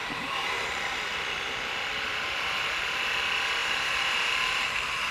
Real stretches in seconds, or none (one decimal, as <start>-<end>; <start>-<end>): 3.1-3.6; 4.6-5.1